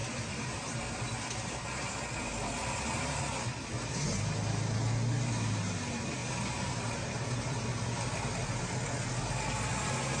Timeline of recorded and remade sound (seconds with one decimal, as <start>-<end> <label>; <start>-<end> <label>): 0.0-3.2 remade; 3.2-6.2 recorded; 6.2-8.7 remade; 8.7-10.2 recorded